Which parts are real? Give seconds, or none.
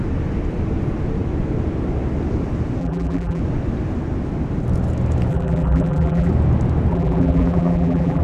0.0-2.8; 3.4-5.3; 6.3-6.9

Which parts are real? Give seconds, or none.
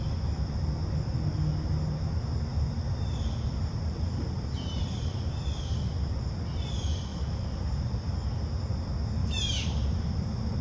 0.0-2.5; 5.8-7.1; 8.1-9.2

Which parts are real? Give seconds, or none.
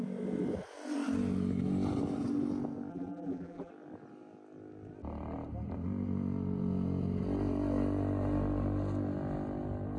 0.0-2.9; 3.7-10.0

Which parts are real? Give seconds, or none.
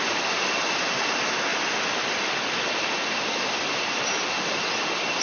0.0-1.5; 4.6-5.2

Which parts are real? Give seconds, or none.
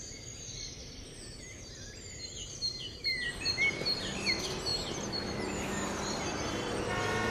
0.0-0.8; 3.5-7.3